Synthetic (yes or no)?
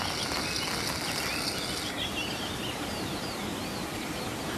no